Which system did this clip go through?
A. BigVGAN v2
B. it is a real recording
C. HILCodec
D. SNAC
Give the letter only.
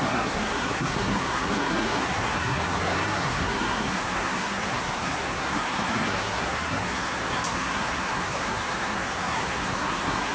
D